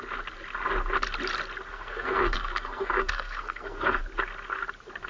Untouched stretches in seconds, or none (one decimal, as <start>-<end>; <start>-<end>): 0.0-1.7; 4.0-5.1